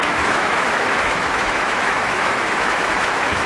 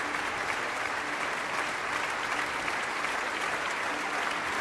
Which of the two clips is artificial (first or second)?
first